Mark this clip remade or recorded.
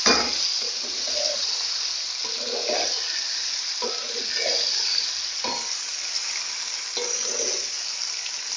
recorded